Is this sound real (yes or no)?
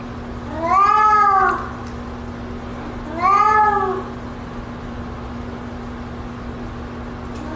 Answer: yes